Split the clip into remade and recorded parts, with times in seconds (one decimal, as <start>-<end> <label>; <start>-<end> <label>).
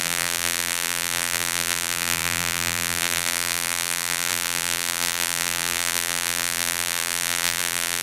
0.0-8.0 remade